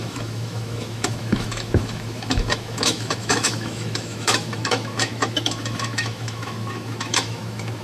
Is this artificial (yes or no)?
yes